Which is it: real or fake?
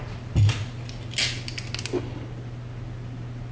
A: real